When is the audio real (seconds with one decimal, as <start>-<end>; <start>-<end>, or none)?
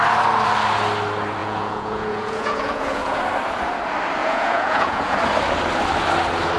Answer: 0.0-1.4; 3.2-4.2; 5.2-6.6